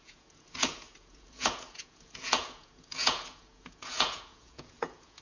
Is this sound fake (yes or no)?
yes